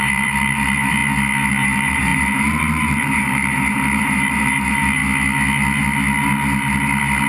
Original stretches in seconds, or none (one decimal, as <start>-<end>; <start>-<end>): 1.0-1.5; 5.0-7.3